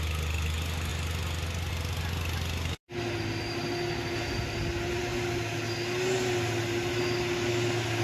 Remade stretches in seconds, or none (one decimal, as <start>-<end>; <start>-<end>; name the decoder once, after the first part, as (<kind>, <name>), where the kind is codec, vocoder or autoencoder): none